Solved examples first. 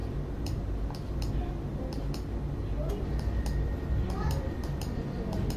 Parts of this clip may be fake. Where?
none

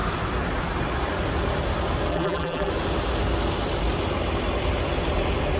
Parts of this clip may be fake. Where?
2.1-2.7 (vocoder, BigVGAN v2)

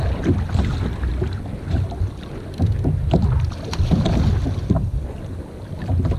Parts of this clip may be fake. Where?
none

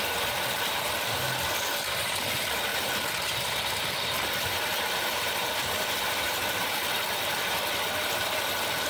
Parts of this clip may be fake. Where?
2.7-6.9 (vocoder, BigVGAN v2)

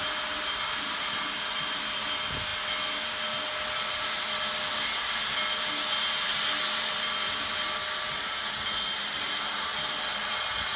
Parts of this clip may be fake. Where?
none

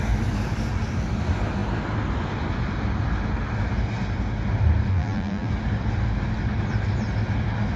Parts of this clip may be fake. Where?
4.9-5.5 (vocoder, BigVGAN v2)